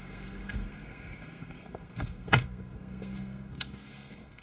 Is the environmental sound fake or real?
fake